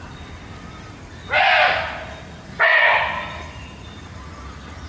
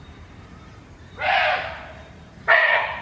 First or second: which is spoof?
second